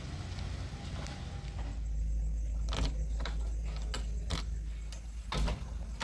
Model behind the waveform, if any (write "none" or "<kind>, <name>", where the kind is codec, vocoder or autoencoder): none